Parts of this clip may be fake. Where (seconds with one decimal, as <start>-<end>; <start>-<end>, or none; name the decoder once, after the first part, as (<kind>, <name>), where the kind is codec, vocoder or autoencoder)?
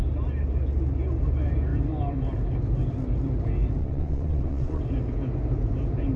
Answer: 3.8-4.8 (vocoder, WaveNeXt)